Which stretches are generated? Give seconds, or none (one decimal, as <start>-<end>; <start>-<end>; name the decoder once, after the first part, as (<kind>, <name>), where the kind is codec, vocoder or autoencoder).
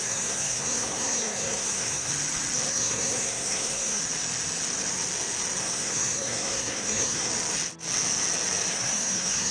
0.0-2.1 (codec, SNAC); 2.7-4.0; 5.6-7.3; 8.7-9.5